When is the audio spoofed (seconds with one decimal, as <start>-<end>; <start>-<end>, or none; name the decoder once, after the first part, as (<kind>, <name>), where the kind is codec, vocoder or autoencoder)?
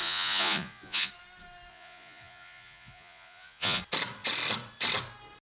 0.0-1.1 (vocoder, Vocos); 1.7-3.8